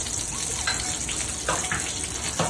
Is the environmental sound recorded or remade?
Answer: recorded